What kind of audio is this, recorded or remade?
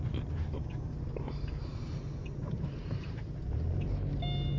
recorded